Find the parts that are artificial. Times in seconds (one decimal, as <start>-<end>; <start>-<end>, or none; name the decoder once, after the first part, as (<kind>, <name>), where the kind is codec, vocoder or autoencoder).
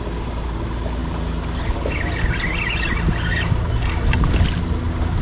none